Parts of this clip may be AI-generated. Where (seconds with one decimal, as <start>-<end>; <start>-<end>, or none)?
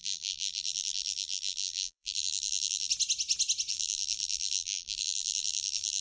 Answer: 0.0-2.9; 3.7-6.0